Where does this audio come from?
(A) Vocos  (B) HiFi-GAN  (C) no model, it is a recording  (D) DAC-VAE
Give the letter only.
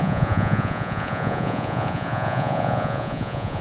A